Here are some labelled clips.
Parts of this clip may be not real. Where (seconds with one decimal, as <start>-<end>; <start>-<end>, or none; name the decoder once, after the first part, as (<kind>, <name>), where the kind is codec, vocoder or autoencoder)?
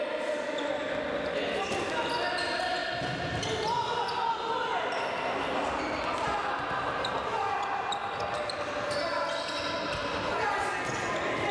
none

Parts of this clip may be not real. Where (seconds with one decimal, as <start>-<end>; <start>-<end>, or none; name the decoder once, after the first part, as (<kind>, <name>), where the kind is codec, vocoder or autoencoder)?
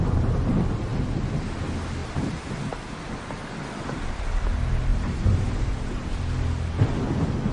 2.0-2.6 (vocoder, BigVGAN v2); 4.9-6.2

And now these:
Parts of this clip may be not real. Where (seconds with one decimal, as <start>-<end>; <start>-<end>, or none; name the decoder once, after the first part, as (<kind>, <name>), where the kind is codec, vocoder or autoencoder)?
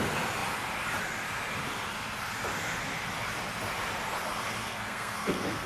4.6-5.7 (codec, SNAC)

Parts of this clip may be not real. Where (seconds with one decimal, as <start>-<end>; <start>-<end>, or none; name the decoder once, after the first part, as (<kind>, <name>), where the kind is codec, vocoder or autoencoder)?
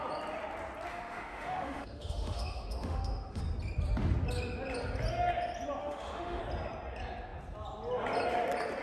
0.9-3.4 (autoencoder, DAC-VAE); 5.8-6.4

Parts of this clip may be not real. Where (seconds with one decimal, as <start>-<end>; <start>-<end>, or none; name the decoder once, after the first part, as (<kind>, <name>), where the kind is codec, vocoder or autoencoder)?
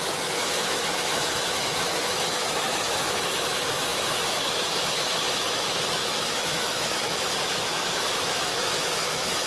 0.0-9.5 (autoencoder, DAC-VAE)